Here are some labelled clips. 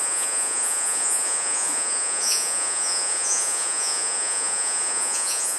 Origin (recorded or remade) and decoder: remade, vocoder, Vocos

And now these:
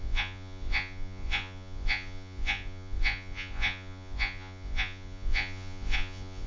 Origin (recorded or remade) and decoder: remade, vocoder, Vocos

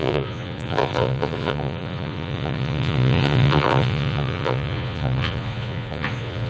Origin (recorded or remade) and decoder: remade, vocoder, Vocos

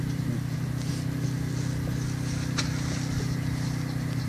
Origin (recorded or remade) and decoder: recorded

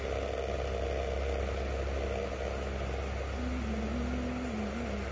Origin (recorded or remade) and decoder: recorded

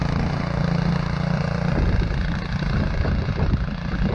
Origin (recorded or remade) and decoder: recorded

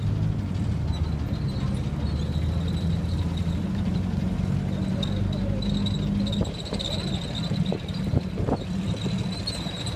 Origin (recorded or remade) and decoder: recorded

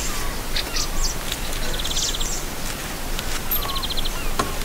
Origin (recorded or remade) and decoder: recorded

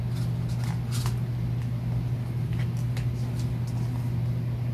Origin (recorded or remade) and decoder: recorded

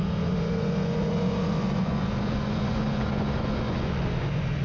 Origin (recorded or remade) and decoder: remade, vocoder, Vocos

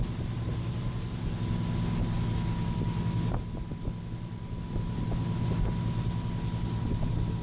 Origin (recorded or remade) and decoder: recorded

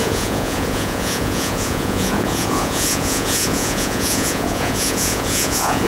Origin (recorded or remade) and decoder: remade, vocoder, Vocos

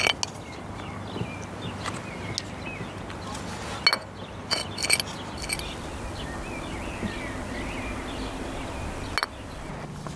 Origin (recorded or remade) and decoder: recorded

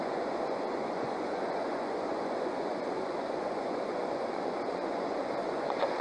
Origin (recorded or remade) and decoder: remade, vocoder, Vocos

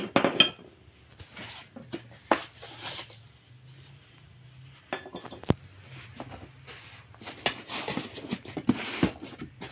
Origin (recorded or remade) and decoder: recorded